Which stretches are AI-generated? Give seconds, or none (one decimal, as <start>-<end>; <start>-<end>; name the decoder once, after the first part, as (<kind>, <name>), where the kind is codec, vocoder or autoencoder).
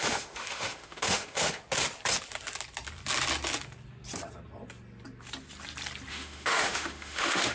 0.0-1.6 (autoencoder, DAC-VAE); 6.1-7.5